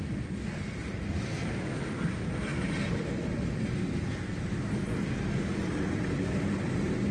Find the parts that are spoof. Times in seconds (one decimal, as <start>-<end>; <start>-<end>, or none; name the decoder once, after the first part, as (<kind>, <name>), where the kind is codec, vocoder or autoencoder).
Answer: none